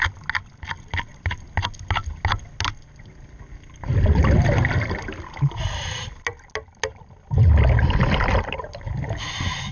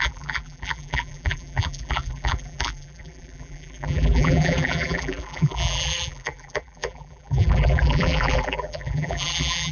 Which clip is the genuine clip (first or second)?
first